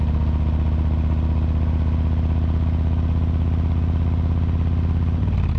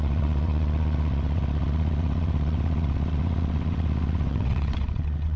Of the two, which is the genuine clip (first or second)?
first